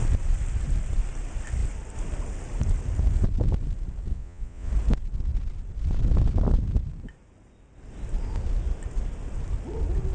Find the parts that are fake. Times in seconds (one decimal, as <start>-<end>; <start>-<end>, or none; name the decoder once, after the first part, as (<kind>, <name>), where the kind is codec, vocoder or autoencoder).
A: 4.1-4.7 (vocoder, Vocos)